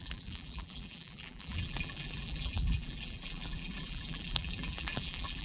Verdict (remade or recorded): remade